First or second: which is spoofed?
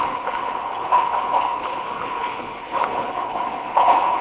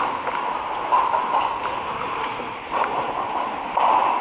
first